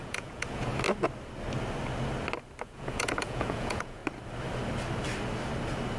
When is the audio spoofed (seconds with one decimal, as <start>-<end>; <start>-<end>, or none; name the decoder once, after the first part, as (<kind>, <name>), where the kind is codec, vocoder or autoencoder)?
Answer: 0.0-0.7 (vocoder, Vocos); 2.6-4.0